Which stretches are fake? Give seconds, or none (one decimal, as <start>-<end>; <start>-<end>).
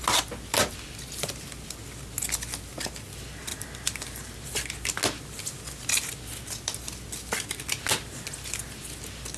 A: 3.5-4.5